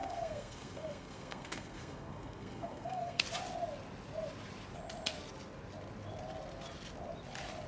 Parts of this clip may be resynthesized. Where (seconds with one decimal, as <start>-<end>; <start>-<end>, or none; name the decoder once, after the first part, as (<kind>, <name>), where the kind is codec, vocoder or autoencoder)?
0.0-3.2 (codec, SNAC)